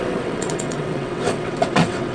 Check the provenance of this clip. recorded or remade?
remade